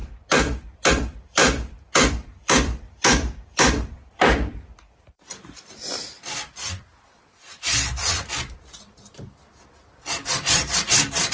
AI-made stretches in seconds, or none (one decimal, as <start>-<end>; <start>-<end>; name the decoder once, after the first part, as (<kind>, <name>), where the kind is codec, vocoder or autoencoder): 0.9-1.4 (vocoder, BigVGAN v2); 2.1-11.3